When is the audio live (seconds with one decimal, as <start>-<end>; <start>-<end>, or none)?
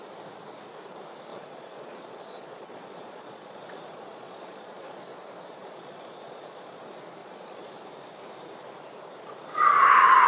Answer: 0.0-1.3; 5.0-5.6; 6.8-7.2; 7.7-10.3